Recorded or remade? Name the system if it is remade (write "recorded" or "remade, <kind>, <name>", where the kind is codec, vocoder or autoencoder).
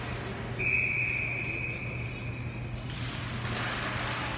recorded